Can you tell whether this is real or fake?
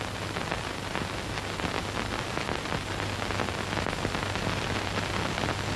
real